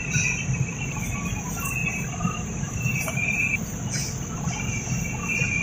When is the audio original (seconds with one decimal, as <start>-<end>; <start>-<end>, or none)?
0.0-1.8; 3.6-5.6